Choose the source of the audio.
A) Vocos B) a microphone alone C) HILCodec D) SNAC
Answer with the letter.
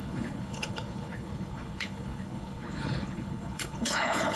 C